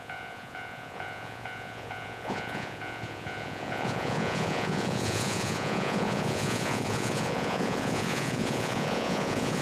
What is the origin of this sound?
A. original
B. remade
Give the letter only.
B